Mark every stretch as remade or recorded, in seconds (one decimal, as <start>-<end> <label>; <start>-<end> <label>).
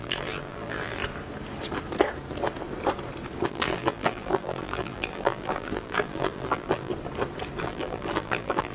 0.0-1.0 remade; 1.0-3.5 recorded; 3.5-6.9 remade; 6.9-7.6 recorded; 7.6-8.7 remade